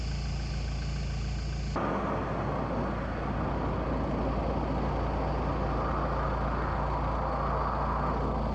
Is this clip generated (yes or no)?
no